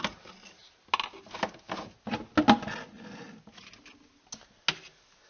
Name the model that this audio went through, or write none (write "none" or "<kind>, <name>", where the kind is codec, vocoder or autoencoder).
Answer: none